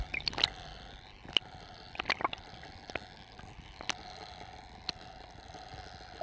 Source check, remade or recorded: recorded